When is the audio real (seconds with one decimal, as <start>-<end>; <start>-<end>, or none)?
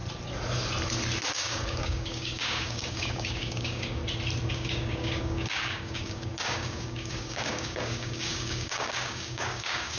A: 0.0-1.3; 4.0-4.5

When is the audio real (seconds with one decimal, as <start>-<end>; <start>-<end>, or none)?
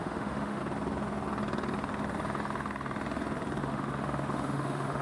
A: 0.6-3.6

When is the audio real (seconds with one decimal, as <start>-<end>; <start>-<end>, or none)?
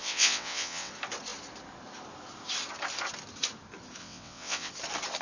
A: 0.9-4.0; 4.7-5.2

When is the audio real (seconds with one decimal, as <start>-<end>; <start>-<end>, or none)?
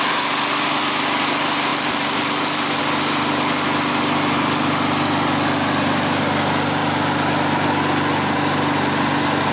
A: 0.0-1.7; 2.8-9.5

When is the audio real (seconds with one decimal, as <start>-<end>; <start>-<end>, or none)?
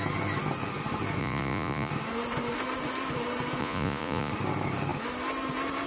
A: 0.0-1.2; 1.9-3.6; 4.3-5.9